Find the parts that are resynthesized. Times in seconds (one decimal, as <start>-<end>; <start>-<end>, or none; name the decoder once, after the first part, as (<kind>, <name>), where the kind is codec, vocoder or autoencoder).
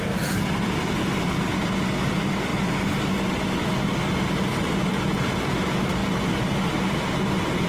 none